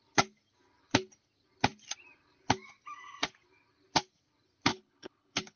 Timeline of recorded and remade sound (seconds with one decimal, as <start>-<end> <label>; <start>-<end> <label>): 0.0-4.7 recorded; 4.7-5.6 remade